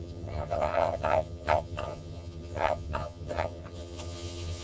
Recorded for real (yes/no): no